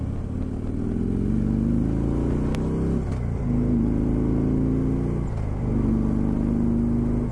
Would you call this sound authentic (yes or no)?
yes